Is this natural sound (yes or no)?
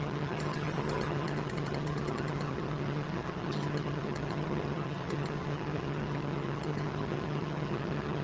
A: no